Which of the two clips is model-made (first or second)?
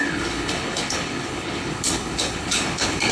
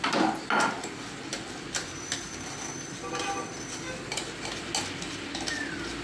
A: first